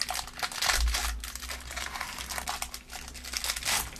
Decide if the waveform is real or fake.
real